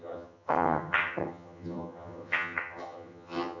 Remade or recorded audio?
remade